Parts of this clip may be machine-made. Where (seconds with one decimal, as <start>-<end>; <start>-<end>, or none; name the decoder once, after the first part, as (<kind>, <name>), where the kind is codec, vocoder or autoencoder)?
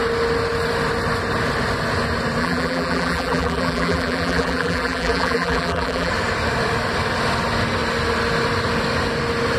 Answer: 2.4-6.1 (vocoder, BigVGAN v2)